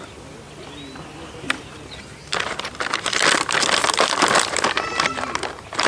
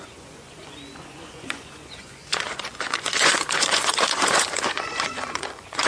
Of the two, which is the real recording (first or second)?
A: first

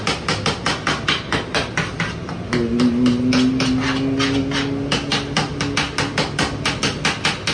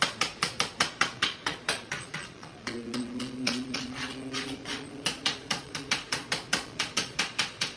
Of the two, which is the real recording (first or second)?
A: first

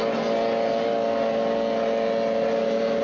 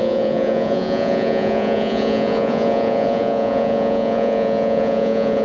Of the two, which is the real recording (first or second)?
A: first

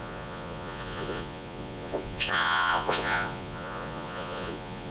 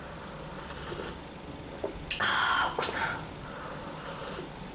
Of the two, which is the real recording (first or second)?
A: second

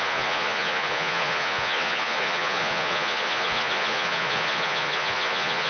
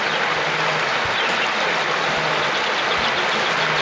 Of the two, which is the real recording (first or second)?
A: second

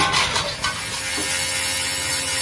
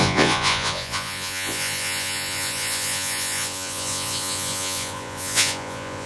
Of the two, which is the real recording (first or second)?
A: first